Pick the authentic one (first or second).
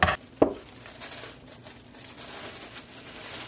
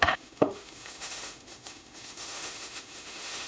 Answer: first